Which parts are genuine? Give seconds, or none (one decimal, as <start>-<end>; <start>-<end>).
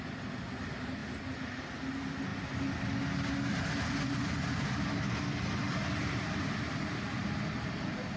0.0-8.2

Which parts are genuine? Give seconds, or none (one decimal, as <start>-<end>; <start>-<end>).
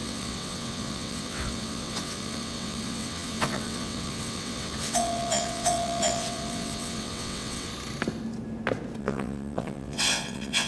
7.7-9.0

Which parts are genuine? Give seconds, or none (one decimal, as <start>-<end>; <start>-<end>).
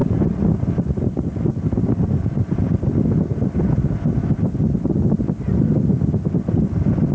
0.0-7.1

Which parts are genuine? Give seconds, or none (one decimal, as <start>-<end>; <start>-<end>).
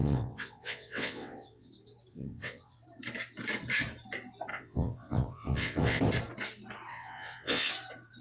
1.7-2.1; 2.8-4.5; 6.0-6.9; 7.7-8.2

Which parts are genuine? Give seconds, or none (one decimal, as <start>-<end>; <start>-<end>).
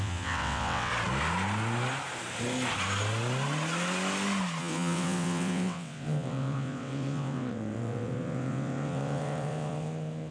0.9-4.6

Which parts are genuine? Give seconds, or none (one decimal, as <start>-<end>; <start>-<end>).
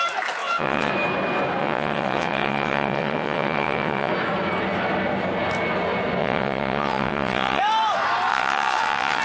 0.0-0.4; 0.9-1.6; 4.1-6.2; 7.6-8.3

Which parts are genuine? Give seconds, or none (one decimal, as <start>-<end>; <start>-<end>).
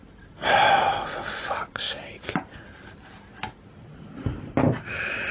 0.0-5.3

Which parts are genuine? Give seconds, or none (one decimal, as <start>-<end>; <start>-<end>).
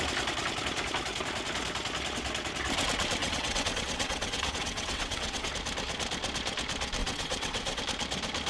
0.0-3.2; 5.5-7.0; 7.8-8.5